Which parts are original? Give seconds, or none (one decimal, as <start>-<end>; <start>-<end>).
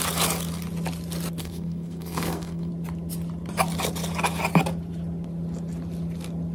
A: 0.0-1.4; 2.7-6.5